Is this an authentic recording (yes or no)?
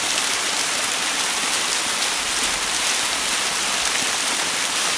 yes